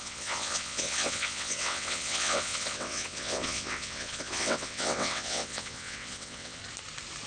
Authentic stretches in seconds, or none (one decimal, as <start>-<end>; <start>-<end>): 6.6-7.3